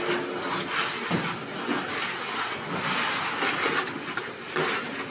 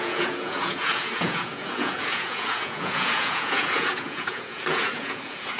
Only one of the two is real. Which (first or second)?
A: first